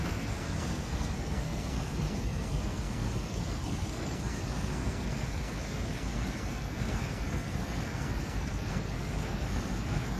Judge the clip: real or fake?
fake